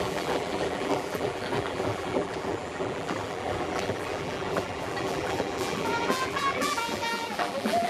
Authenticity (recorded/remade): remade